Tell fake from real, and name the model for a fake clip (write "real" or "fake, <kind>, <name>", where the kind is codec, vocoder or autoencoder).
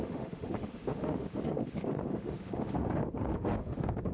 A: fake, autoencoder, DAC-VAE